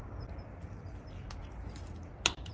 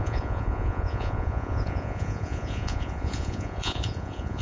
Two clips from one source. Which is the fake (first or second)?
second